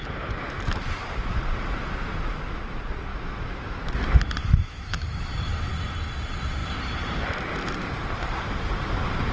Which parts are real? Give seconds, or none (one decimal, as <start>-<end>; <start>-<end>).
0.0-3.1; 3.9-4.4; 5.3-9.3